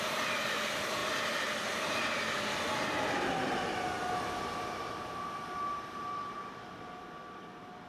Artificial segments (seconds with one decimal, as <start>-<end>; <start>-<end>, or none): none